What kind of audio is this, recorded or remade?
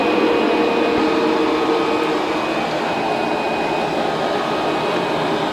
recorded